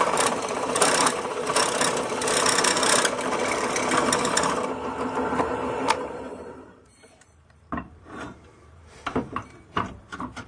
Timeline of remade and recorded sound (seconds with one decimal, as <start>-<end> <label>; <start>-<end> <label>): 0.0-1.5 remade; 1.5-5.4 recorded; 5.4-10.5 remade